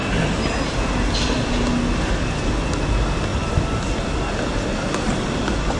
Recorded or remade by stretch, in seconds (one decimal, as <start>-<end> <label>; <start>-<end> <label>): 0.0-5.8 recorded

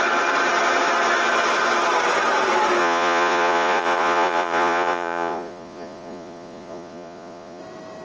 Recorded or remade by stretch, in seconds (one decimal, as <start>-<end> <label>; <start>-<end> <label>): 0.0-2.8 recorded; 2.8-7.6 remade; 7.6-8.0 recorded

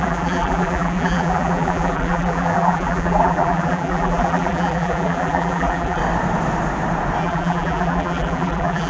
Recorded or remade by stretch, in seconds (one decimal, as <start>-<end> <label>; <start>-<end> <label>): 0.0-6.0 remade; 6.0-7.2 recorded; 7.2-8.9 remade